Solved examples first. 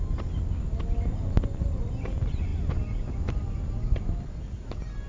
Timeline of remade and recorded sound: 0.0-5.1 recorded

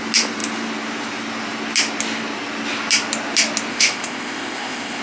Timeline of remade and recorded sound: 0.0-3.7 recorded; 3.7-5.0 remade

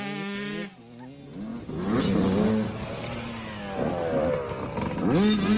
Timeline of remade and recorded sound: 0.0-5.6 recorded

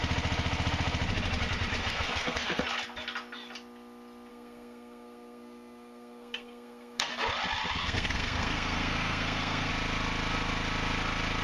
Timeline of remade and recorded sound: 0.0-1.8 recorded; 1.8-2.6 remade; 2.6-4.3 recorded; 4.3-7.1 remade; 7.1-7.8 recorded; 7.8-9.7 remade; 9.7-11.4 recorded

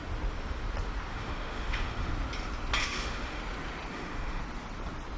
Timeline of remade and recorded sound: 0.0-1.1 recorded; 1.1-2.1 remade; 2.1-2.8 recorded; 2.8-3.4 remade; 3.4-3.9 recorded; 3.9-4.4 remade; 4.4-5.2 recorded

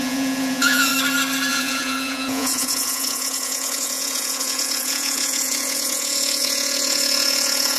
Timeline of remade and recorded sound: 0.0-0.9 remade; 0.9-1.5 recorded; 1.5-7.8 remade

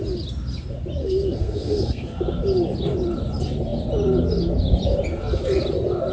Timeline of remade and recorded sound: 0.0-1.0 recorded; 1.0-2.2 remade; 2.2-6.1 recorded

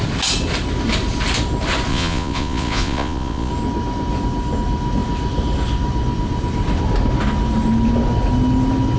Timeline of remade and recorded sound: 0.0-1.9 recorded; 1.9-3.5 remade; 3.5-9.0 recorded